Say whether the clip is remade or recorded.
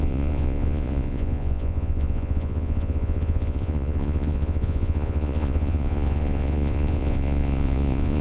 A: remade